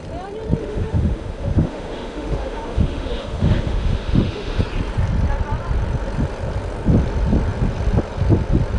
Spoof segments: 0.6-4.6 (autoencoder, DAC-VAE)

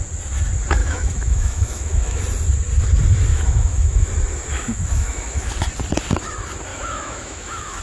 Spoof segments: 0.8-2.2 (autoencoder, DAC-VAE); 3.3-4.1; 4.5-5.5; 6.7-7.8

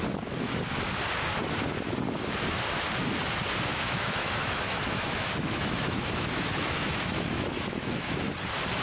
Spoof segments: 3.7-8.3 (autoencoder, DAC-VAE)

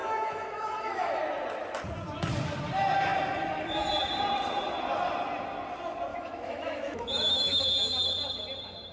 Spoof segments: 0.0-1.2 (autoencoder, DAC-VAE); 6.1-7.6

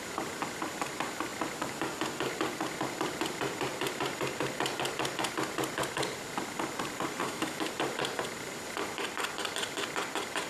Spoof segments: 7.2-7.7 (autoencoder, DAC-VAE)